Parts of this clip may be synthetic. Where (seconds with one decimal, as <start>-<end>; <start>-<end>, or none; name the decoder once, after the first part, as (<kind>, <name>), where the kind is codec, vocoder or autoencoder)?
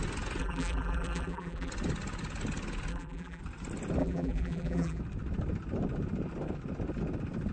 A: 0.4-1.7 (vocoder, BigVGAN v2); 2.9-3.4; 4.0-5.0